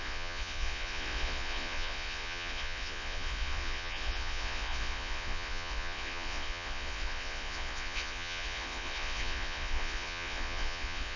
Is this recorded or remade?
remade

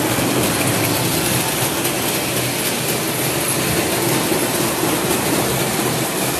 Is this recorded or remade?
recorded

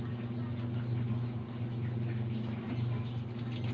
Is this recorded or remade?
recorded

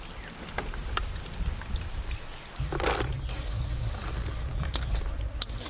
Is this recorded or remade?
recorded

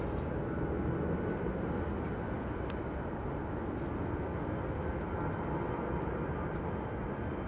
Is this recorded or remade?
recorded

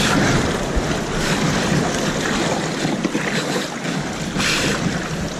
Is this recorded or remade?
recorded